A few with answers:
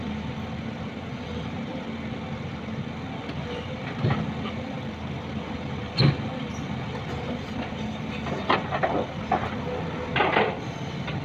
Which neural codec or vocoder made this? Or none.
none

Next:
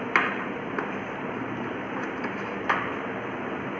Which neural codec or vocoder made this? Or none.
vocoder, BigVGAN v2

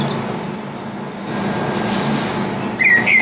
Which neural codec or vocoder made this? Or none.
none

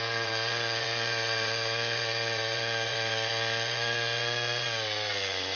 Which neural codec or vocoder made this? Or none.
vocoder, Vocos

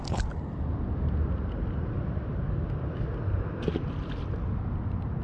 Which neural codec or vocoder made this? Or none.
none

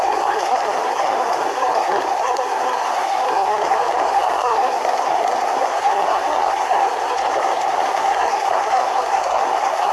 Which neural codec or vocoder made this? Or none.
codec, SNAC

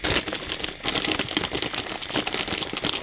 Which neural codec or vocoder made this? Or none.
none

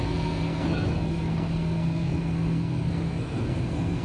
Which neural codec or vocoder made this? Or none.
codec, SNAC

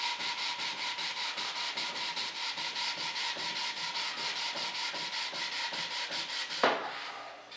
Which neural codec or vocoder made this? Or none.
none